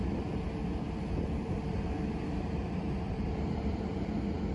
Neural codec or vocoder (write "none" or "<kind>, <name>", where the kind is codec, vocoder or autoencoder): vocoder, BigVGAN v2